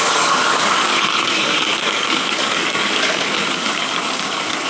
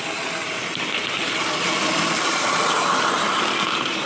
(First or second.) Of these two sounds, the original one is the second